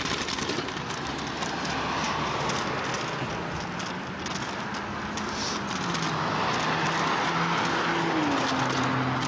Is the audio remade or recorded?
recorded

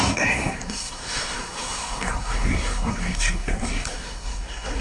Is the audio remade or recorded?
remade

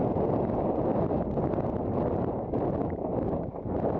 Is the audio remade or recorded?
recorded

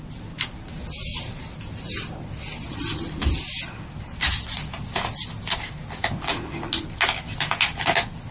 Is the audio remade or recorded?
recorded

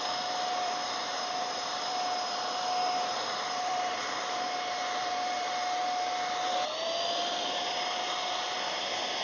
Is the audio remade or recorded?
remade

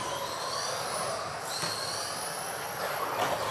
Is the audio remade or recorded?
recorded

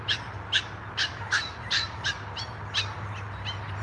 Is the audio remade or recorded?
recorded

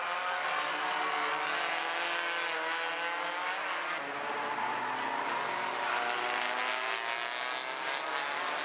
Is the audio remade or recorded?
recorded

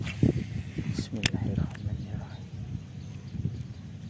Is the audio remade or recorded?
recorded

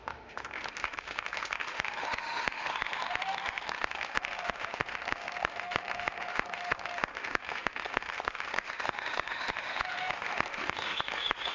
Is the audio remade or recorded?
remade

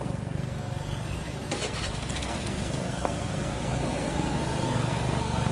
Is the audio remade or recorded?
remade